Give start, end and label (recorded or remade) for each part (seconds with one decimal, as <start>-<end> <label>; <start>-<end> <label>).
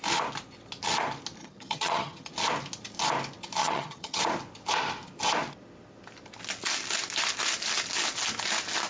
0.0-1.4 recorded; 1.4-2.3 remade; 2.3-3.6 recorded; 3.6-4.2 remade; 4.2-8.9 recorded